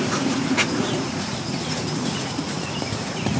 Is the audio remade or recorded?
remade